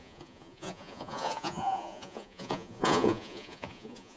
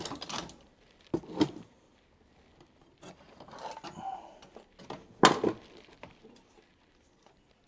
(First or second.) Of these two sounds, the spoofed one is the first